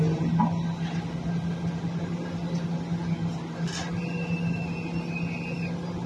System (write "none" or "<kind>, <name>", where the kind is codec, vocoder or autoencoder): none